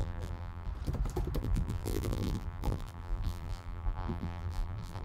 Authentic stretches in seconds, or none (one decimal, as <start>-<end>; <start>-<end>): 0.7-1.4